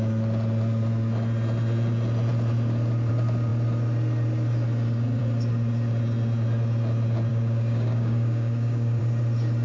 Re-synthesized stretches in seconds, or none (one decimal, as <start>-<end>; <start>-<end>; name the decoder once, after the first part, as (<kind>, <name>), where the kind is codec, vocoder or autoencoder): 7.3-9.0 (codec, DAC)